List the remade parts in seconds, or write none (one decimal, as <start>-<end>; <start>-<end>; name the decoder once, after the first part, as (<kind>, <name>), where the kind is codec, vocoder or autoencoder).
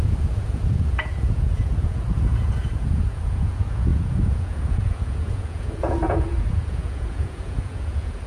0.0-8.3 (vocoder, Vocos)